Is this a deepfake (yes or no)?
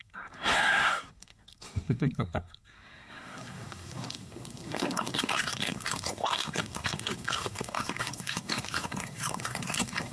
yes